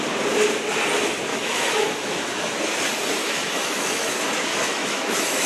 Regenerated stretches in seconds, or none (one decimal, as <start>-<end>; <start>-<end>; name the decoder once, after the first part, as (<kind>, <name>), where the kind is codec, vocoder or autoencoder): 1.3-2.5 (autoencoder, DAC-VAE); 3.2-4.1; 4.5-5.5